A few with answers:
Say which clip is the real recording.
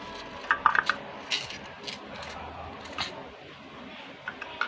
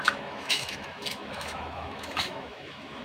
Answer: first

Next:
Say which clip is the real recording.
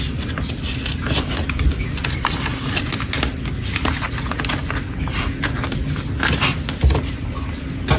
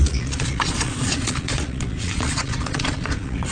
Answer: first